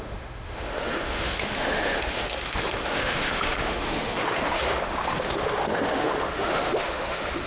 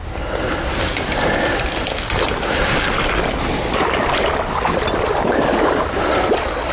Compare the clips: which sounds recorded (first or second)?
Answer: second